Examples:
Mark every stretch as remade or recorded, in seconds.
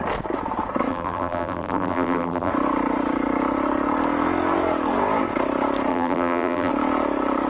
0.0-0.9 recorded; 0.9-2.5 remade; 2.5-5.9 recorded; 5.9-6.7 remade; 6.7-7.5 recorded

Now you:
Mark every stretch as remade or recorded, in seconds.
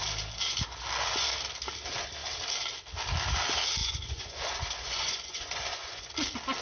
0.0-3.8 recorded; 3.8-6.1 remade; 6.1-6.6 recorded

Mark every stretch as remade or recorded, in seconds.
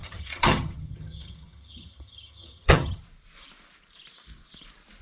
0.0-3.0 remade; 3.0-5.0 recorded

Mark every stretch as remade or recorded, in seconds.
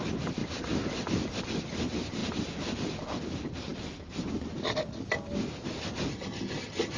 0.0-6.1 recorded; 6.1-7.0 remade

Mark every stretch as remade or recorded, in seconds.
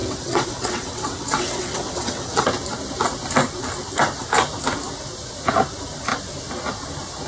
0.0-2.5 remade; 2.5-7.3 recorded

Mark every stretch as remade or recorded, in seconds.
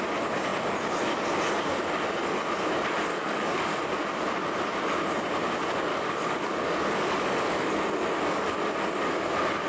0.0-3.1 recorded; 3.1-3.8 remade; 3.8-5.9 recorded; 5.9-7.7 remade; 7.7-9.7 recorded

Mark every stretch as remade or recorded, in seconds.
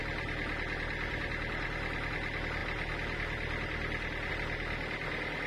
0.0-5.5 recorded